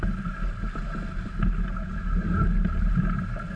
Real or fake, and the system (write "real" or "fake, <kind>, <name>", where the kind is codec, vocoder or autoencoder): real